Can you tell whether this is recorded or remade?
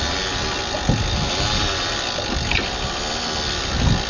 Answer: recorded